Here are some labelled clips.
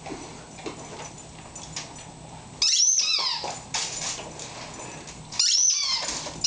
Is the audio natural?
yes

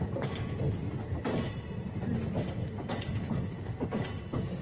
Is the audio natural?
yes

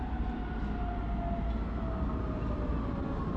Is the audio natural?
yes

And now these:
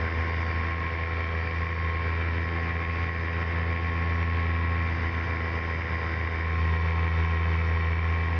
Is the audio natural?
yes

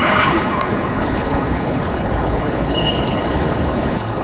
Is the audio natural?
no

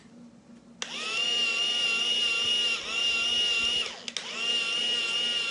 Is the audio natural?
yes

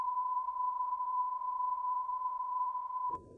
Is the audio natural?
no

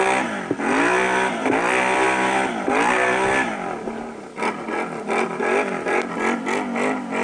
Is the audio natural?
yes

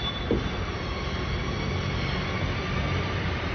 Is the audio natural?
yes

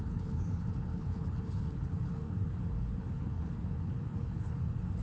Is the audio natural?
no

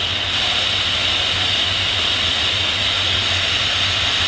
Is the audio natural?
yes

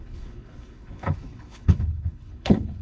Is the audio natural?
no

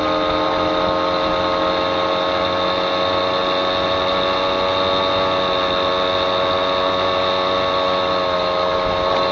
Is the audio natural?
yes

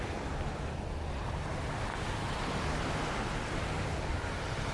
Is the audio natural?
yes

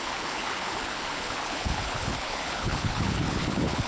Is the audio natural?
no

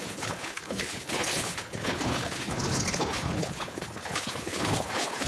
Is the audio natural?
no